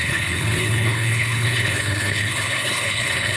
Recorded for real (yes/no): no